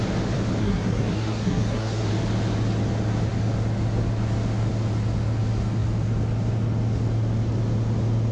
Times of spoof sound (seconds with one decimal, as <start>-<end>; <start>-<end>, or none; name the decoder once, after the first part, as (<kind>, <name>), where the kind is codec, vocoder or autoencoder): 0.6-2.1 (codec, SNAC)